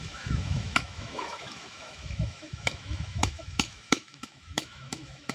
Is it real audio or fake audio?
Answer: fake